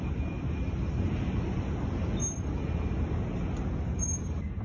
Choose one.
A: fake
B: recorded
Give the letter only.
B